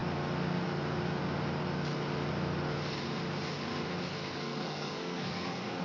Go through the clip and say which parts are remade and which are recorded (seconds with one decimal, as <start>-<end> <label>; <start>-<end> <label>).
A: 0.0-4.2 recorded; 4.2-5.8 remade